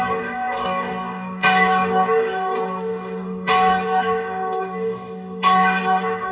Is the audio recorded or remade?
remade